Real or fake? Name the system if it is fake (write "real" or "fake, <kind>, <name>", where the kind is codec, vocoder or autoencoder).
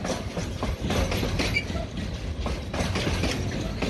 real